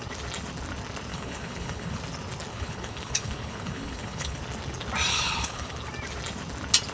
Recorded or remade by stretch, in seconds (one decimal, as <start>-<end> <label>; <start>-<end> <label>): 0.0-1.1 recorded; 1.1-2.0 remade; 2.0-2.5 recorded; 2.5-4.4 remade; 4.4-5.1 recorded; 5.1-5.8 remade; 5.8-6.9 recorded